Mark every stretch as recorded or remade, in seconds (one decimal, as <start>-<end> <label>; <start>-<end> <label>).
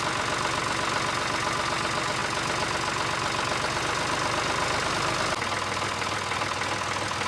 0.0-7.3 recorded